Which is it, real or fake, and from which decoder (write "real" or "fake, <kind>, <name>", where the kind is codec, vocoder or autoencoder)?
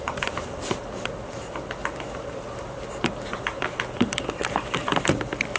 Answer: fake, vocoder, BigVGAN v2